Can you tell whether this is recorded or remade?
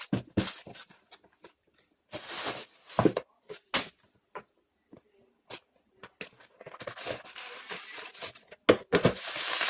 recorded